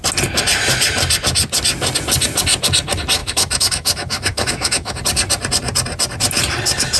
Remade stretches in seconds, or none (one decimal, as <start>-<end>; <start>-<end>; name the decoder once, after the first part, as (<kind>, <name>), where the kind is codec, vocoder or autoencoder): 3.2-5.0 (autoencoder, DAC-VAE)